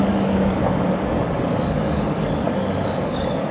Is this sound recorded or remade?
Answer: remade